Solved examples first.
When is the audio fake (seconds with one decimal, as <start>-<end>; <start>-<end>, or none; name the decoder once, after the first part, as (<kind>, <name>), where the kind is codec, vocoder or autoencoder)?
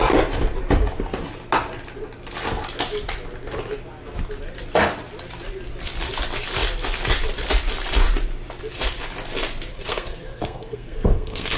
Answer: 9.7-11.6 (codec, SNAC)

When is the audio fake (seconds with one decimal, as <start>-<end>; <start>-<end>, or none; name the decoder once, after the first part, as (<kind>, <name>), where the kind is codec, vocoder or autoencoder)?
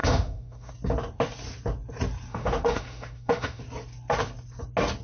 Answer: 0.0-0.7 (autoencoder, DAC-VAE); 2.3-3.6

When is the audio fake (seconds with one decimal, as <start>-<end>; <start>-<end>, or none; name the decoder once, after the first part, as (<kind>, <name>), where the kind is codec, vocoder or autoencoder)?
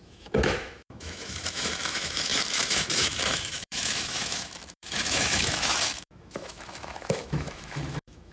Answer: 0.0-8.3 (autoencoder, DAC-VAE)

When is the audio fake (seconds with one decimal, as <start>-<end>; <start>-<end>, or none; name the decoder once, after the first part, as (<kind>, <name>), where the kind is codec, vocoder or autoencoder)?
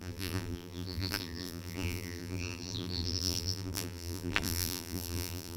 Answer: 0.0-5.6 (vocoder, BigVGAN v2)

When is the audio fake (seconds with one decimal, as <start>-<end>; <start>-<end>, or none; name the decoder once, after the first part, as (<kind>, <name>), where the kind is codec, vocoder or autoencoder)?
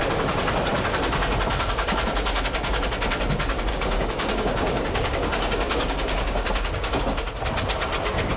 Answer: 3.7-7.0 (codec, DAC)